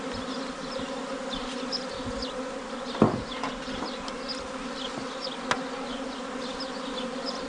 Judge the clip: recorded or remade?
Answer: recorded